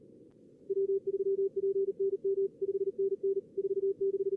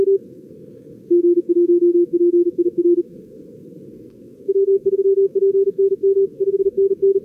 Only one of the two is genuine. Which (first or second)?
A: first